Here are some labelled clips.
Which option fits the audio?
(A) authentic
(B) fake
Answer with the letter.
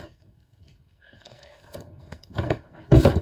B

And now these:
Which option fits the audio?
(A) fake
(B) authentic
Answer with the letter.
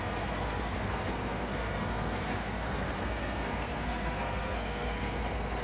A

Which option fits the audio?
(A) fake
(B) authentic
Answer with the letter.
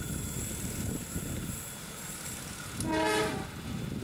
B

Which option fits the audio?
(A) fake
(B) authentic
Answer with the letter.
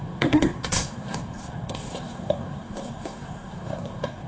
A